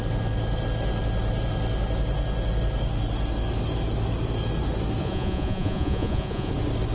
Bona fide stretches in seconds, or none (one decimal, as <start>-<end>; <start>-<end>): 0.0-5.0; 6.5-6.9